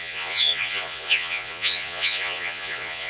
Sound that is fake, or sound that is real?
fake